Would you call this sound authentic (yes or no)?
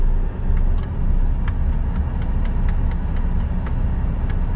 yes